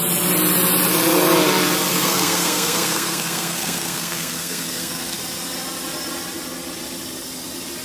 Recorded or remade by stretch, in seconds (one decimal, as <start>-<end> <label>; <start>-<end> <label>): 0.0-1.9 recorded; 1.9-5.2 remade; 5.2-7.8 recorded